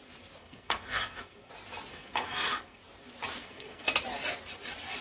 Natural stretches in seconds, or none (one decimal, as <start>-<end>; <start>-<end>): 0.0-0.4; 1.5-1.9; 2.8-3.4; 3.9-5.0